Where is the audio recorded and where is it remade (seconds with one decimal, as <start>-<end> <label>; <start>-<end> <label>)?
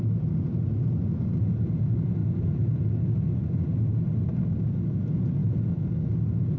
0.0-6.6 recorded